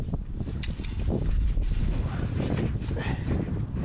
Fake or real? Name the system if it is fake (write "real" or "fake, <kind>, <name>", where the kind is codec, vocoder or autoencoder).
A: real